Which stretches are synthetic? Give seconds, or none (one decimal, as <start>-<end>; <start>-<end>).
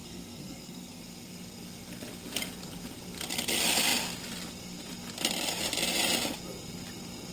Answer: 0.0-1.0